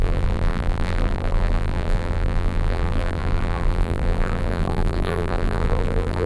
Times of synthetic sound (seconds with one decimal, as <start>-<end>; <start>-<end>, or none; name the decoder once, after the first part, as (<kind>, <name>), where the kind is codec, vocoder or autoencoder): 0.0-6.3 (vocoder, BigVGAN v2)

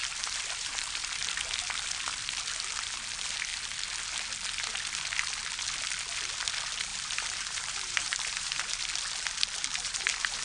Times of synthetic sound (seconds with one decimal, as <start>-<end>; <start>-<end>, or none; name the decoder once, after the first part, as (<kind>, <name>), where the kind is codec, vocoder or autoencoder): 0.0-1.1 (vocoder, BigVGAN v2); 6.9-8.8; 9.6-10.4

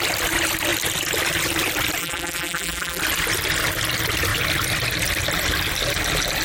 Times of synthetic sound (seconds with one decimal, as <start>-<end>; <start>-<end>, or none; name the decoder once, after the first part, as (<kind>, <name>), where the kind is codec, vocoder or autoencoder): 2.0-3.0 (vocoder, BigVGAN v2)

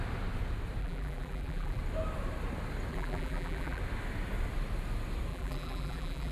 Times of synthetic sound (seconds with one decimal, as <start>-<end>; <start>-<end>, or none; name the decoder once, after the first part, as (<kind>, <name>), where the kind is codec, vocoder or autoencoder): 0.8-1.8 (vocoder, BigVGAN v2); 2.9-3.8; 5.3-6.3

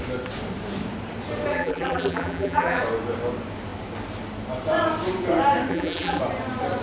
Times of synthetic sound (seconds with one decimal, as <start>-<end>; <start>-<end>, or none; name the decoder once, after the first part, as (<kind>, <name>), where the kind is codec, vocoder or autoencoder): 1.5-2.8 (vocoder, BigVGAN v2); 5.7-6.2

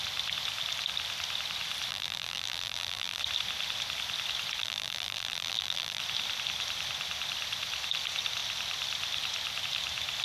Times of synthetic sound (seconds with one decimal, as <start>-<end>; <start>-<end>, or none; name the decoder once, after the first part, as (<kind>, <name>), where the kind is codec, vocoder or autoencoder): 1.9-3.2 (vocoder, BigVGAN v2); 4.6-6.0

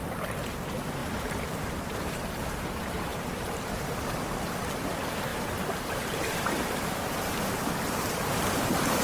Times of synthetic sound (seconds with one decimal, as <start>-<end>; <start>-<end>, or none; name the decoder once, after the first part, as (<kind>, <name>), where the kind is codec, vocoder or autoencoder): 1.0-2.7 (vocoder, BigVGAN v2); 3.1-4.2; 5.3-7.4